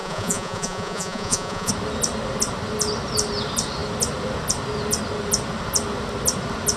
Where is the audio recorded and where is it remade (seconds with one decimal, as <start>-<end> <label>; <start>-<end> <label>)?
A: 0.0-1.7 remade; 1.7-6.8 recorded